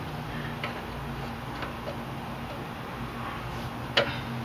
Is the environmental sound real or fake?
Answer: real